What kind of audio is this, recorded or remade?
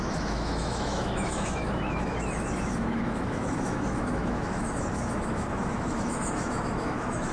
remade